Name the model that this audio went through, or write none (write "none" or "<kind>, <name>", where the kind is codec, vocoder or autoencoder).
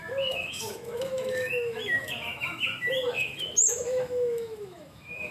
autoencoder, DAC-VAE